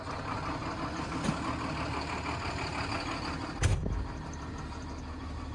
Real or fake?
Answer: real